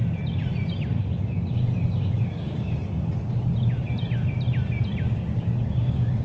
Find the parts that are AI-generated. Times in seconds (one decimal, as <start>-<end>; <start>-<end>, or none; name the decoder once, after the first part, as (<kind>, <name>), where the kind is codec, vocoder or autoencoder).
2.2-2.8 (codec, DAC); 5.1-6.2